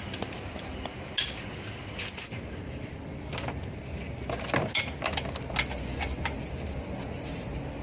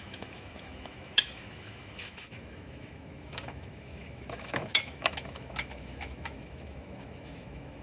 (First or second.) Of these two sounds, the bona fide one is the first